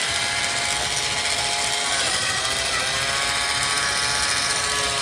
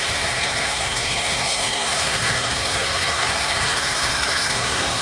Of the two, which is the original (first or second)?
first